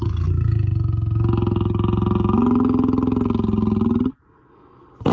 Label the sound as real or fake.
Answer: real